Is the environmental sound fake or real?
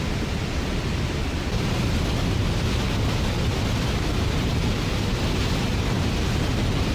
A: real